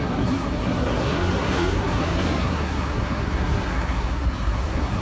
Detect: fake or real fake